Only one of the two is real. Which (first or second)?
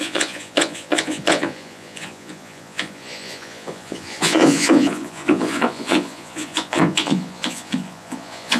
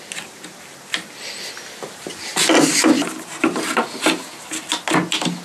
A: second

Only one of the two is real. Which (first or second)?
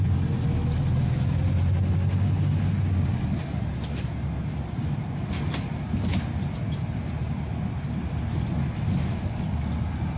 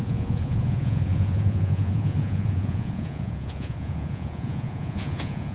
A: first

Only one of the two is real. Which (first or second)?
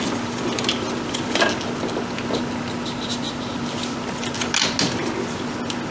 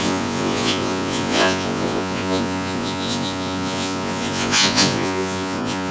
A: first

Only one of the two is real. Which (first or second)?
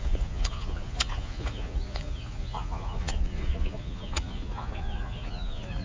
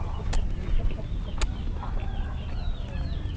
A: second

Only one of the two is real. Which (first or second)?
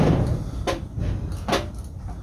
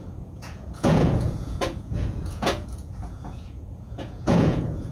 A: first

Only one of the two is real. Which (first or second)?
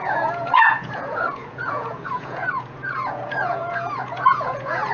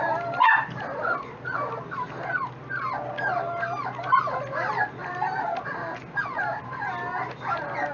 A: second